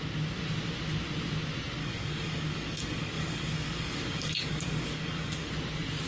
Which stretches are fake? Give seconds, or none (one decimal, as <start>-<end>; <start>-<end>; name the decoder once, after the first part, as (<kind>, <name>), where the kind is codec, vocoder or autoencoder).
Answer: 1.8-5.5 (codec, DAC)